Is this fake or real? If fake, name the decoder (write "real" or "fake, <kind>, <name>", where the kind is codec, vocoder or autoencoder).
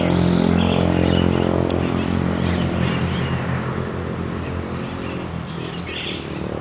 real